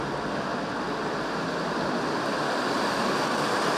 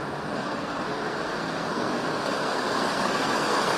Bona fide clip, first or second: first